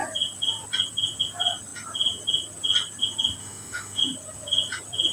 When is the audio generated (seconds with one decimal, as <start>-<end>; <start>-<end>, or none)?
3.4-4.0